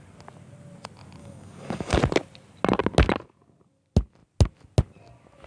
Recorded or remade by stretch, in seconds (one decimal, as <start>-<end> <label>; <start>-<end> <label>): 0.0-1.2 recorded; 1.2-2.0 remade; 2.0-5.5 recorded